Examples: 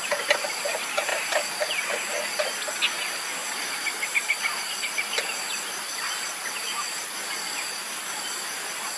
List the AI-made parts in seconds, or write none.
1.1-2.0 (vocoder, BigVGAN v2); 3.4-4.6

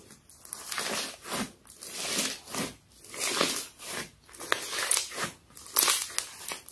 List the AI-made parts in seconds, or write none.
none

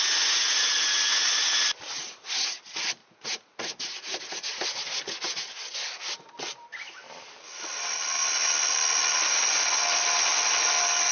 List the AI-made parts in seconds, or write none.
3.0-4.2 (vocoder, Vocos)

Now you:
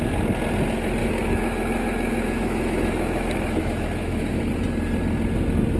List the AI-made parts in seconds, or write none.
1.0-4.5 (autoencoder, DAC-VAE)

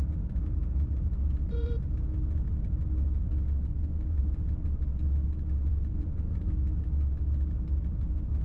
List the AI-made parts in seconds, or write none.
1.4-1.9 (vocoder, Vocos); 3.7-4.4; 5.7-6.5

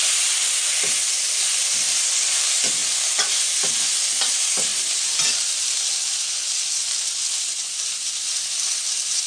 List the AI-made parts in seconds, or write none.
0.0-2.8 (vocoder, BigVGAN v2); 3.3-9.3

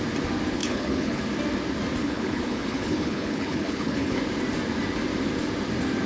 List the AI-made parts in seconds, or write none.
0.6-1.2 (codec, HILCodec); 2.0-4.2